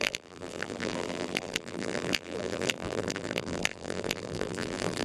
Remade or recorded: remade